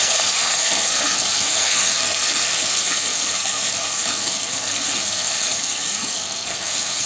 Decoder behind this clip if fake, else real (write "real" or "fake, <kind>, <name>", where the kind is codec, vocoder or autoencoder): fake, codec, SNAC